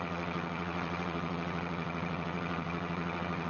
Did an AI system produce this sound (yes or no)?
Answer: yes